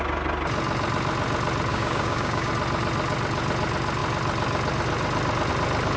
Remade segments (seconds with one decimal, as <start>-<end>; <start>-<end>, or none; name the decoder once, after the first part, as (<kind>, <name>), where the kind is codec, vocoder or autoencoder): 1.7-2.5 (codec, DAC)